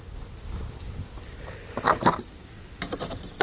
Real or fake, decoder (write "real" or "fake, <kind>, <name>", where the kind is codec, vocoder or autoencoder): real